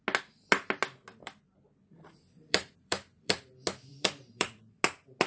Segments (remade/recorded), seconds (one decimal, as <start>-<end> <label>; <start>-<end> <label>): 0.0-1.1 recorded; 1.1-3.5 remade; 3.5-3.9 recorded; 3.9-4.8 remade; 4.8-5.3 recorded